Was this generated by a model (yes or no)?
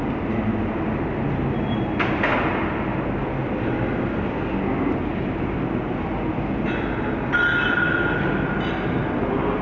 no